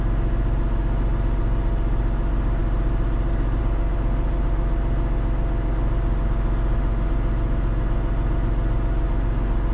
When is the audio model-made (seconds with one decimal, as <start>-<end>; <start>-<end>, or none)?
none